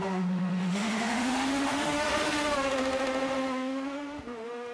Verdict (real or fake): fake